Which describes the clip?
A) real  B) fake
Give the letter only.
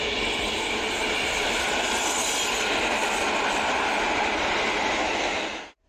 A